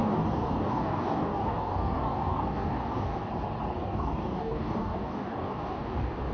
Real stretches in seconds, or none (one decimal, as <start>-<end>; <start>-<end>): 3.3-3.8